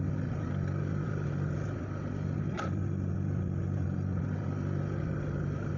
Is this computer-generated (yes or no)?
no